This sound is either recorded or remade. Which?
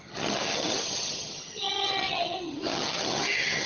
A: remade